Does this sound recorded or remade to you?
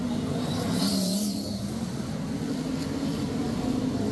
recorded